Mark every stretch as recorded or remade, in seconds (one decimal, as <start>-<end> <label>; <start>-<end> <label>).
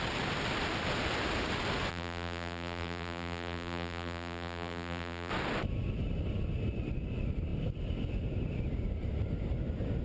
0.0-1.9 recorded; 1.9-5.3 remade; 5.3-10.0 recorded